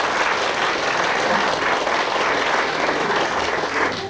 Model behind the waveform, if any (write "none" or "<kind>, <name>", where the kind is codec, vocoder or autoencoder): none